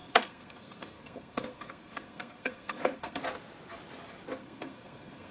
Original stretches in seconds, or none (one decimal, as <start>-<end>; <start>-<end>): 3.2-4.4